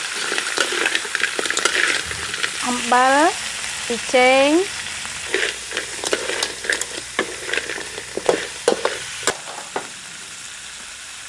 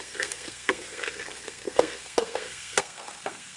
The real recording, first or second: first